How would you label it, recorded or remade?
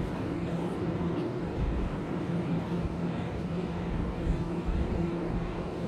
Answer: remade